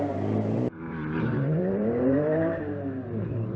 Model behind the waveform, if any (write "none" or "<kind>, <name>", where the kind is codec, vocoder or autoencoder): vocoder, BigVGAN v2